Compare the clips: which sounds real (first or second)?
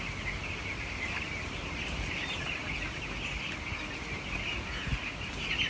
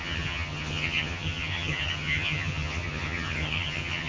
first